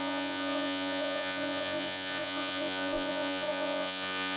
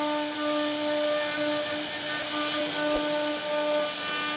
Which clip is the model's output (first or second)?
first